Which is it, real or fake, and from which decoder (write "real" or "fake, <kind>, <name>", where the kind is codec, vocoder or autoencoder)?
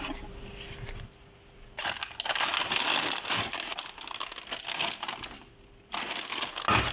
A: real